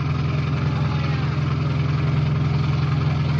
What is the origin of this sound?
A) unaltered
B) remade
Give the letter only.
A